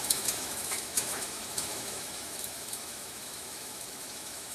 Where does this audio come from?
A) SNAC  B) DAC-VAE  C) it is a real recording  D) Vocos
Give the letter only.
B